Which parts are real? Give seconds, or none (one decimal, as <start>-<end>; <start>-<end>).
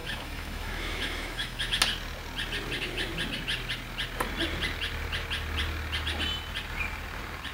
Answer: 1.8-7.5